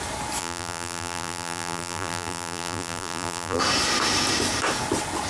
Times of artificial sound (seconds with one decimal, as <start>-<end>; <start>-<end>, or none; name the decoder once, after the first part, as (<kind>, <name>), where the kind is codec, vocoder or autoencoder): 0.4-3.6 (vocoder, BigVGAN v2)